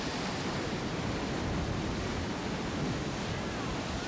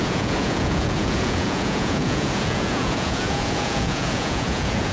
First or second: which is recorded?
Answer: first